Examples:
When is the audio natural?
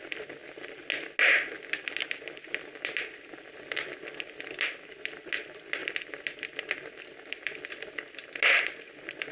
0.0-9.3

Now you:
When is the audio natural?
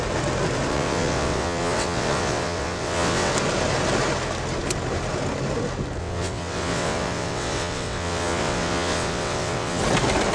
0.0-0.7; 3.3-6.0; 9.8-10.3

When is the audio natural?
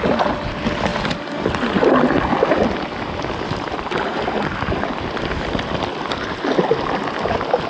0.0-7.7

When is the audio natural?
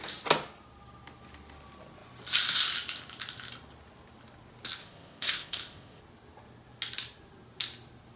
0.0-4.8; 6.0-8.2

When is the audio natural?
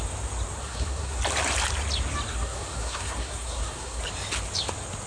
0.0-0.6; 1.2-2.3; 4.0-5.1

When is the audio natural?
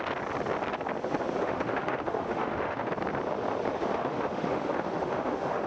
0.0-1.4; 2.9-3.7